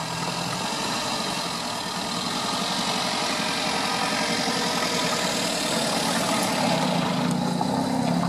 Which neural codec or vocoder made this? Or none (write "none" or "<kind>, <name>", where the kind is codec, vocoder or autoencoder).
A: none